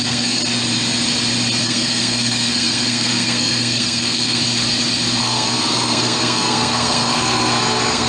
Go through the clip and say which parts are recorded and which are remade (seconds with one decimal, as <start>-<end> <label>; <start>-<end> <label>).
0.0-0.4 remade; 0.4-1.6 recorded; 1.6-4.4 remade; 4.4-5.2 recorded; 5.2-8.1 remade